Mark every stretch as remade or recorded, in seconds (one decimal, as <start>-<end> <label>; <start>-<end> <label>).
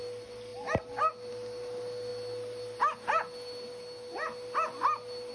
0.0-5.3 recorded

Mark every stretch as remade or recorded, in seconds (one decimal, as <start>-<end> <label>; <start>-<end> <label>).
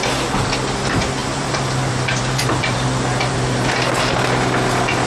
0.0-1.2 recorded; 1.2-3.7 remade; 3.7-5.1 recorded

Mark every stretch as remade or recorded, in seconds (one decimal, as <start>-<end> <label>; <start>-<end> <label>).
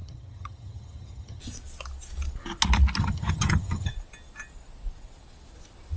0.0-1.4 remade; 1.4-3.0 recorded; 3.0-3.9 remade; 3.9-6.0 recorded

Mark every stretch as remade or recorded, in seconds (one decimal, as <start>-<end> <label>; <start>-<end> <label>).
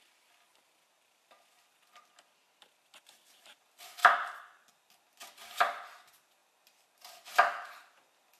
0.0-8.4 recorded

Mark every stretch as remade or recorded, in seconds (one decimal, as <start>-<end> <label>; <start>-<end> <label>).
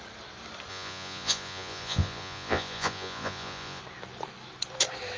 0.0-0.7 recorded; 0.7-3.8 remade; 3.8-5.2 recorded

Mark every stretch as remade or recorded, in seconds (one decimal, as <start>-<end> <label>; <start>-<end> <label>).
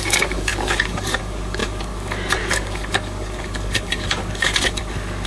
0.0-5.3 remade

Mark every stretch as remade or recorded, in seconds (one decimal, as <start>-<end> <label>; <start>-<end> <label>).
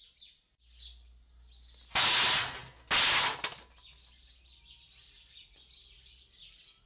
0.0-6.9 recorded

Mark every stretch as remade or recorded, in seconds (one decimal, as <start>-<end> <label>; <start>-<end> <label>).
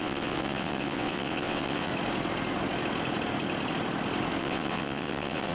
0.0-1.9 remade; 1.9-4.4 recorded; 4.4-5.5 remade